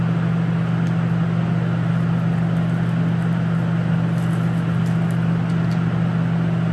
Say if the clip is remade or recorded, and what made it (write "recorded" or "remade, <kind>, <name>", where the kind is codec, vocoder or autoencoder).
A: recorded